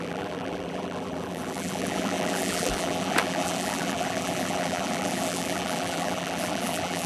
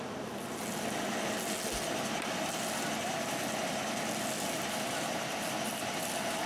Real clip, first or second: second